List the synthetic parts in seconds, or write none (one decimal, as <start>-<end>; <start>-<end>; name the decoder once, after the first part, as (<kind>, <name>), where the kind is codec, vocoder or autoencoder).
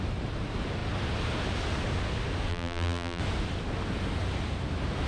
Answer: 2.5-3.2 (vocoder, BigVGAN v2)